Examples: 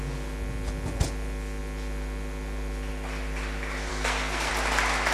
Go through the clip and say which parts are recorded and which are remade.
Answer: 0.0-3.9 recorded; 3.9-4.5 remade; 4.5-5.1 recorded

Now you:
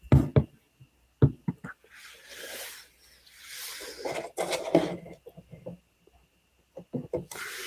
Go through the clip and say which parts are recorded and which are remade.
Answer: 0.0-7.7 recorded

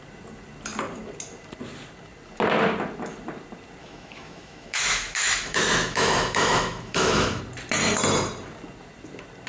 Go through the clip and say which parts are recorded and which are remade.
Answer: 0.0-3.8 recorded; 3.8-7.4 remade; 7.4-9.5 recorded

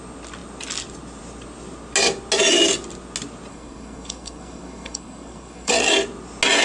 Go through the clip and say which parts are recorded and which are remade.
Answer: 0.0-3.5 recorded; 3.5-5.7 remade; 5.7-6.6 recorded

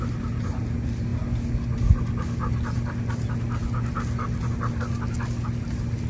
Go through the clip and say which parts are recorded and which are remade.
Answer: 0.0-6.1 recorded

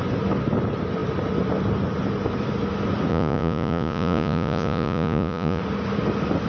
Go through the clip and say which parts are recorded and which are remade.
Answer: 0.0-3.1 recorded; 3.1-5.6 remade; 5.6-6.5 recorded